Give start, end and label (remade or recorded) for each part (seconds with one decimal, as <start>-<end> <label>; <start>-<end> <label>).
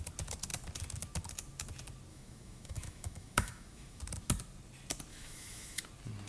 0.0-2.1 recorded; 2.1-4.0 remade; 4.0-5.1 recorded; 5.1-5.8 remade; 5.8-6.3 recorded